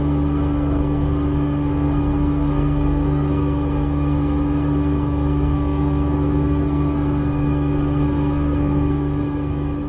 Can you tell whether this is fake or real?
fake